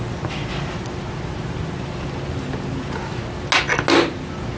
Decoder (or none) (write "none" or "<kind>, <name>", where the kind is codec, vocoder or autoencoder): none